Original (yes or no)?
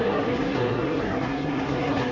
no